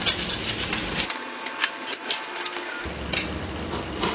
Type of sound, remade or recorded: recorded